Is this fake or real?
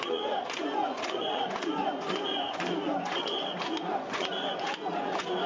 fake